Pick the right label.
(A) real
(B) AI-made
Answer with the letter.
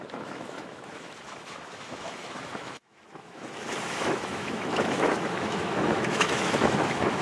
B